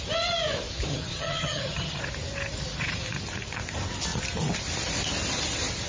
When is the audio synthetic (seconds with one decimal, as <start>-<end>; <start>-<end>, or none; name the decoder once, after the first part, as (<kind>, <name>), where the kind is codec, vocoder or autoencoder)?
0.9-2.0 (vocoder, HiFi-GAN)

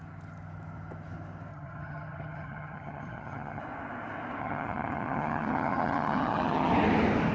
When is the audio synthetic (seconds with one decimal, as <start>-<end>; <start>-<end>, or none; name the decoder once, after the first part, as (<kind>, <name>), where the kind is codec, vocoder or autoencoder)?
1.5-3.6 (vocoder, HiFi-GAN); 4.4-6.7

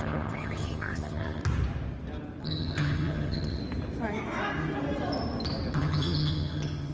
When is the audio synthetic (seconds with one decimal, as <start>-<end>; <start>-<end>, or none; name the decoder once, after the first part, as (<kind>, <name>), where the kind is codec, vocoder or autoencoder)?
0.0-1.4 (vocoder, HiFi-GAN); 2.4-3.6; 5.7-6.9

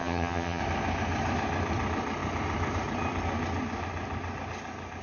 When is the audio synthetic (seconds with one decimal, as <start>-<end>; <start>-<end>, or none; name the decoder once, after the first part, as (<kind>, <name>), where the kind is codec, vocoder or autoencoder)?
0.0-0.6 (vocoder, HiFi-GAN)